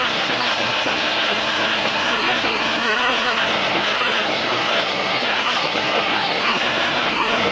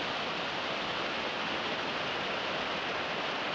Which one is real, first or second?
second